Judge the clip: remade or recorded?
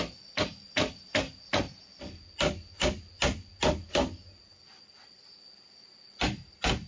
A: recorded